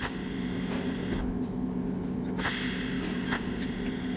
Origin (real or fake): real